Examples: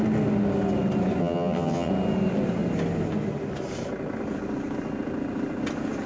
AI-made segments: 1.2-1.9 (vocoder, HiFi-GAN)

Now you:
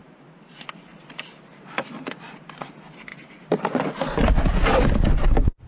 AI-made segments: none